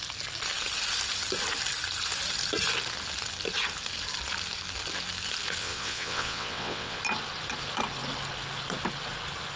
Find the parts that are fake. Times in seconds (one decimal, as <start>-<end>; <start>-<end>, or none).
5.6-7.0